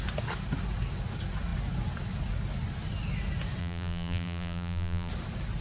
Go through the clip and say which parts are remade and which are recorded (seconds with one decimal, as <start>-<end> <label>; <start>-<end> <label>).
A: 0.0-3.6 recorded; 3.6-5.1 remade; 5.1-5.6 recorded